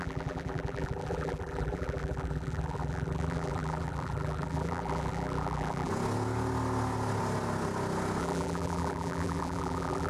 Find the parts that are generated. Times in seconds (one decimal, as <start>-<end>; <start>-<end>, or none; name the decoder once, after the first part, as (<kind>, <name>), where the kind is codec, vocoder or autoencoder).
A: 0.0-5.9 (vocoder, BigVGAN v2); 8.2-10.1